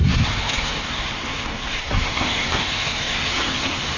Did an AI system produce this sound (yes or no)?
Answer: yes